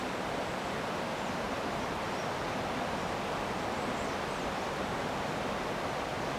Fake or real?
fake